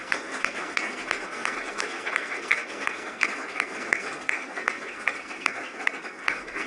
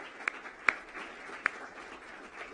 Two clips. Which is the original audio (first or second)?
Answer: second